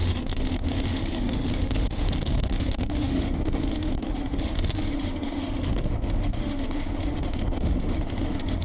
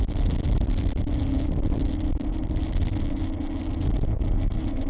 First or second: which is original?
second